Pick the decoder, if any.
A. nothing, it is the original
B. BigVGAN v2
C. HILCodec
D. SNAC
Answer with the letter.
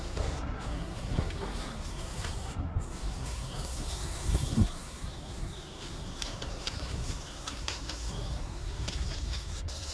D